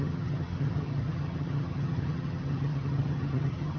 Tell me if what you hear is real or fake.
fake